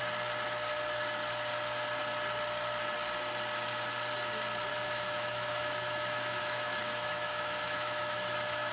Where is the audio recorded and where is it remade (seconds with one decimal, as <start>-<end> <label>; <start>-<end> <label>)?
0.0-4.7 recorded; 4.7-8.7 remade